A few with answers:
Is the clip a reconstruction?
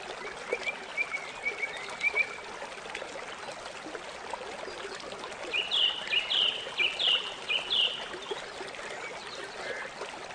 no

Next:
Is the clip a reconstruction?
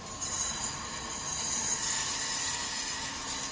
no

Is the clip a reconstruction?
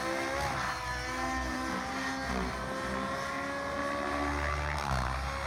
no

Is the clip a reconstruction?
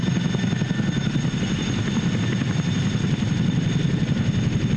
no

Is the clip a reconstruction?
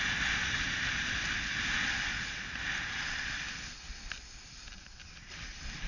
no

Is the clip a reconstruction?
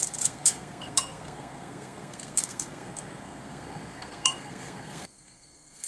yes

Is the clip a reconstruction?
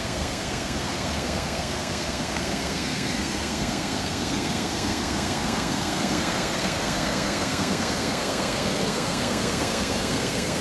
yes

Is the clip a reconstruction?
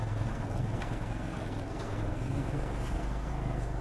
yes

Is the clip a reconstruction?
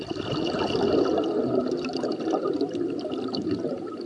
no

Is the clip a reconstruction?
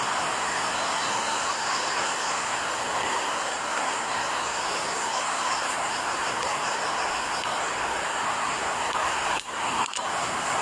yes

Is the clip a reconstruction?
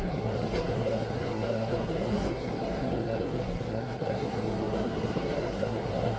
yes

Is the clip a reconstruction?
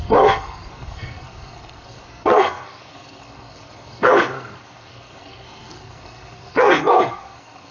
yes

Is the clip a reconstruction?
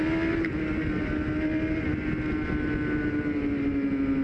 no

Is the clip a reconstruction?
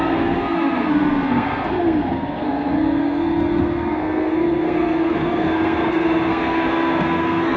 yes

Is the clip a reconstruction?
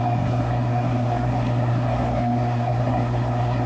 yes